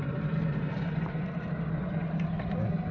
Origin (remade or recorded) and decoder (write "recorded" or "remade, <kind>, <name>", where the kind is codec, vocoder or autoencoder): recorded